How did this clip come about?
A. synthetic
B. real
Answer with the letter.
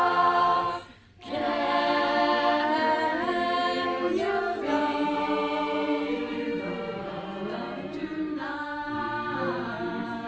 B